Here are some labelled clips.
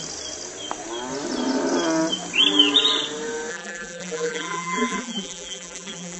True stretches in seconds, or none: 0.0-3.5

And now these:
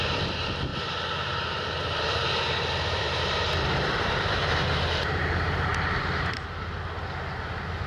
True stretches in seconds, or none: 0.0-0.7; 5.2-5.7; 6.8-7.9

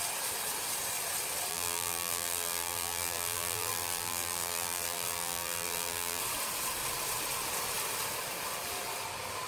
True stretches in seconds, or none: 0.0-1.5; 6.2-9.5

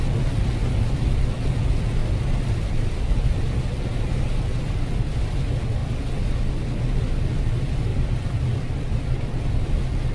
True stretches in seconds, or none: 0.0-2.0; 3.1-7.9; 9.1-10.1

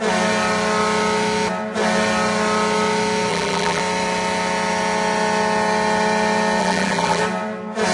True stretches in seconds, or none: 0.0-3.3; 3.8-6.6; 7.2-7.9

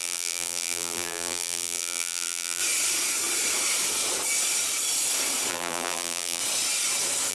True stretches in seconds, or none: 2.6-5.5; 6.4-7.3

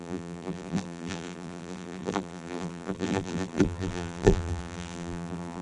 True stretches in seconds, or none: none